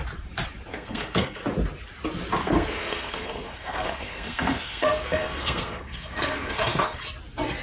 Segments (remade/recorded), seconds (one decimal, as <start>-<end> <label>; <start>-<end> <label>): 0.0-0.7 recorded; 0.7-1.4 remade; 1.4-2.4 recorded; 2.4-7.0 remade; 7.0-7.6 recorded